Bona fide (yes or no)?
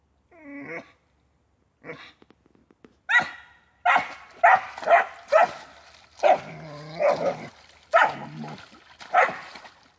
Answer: yes